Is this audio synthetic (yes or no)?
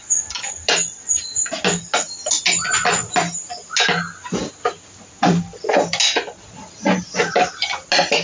no